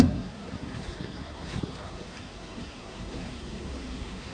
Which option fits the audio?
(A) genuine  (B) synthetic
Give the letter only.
B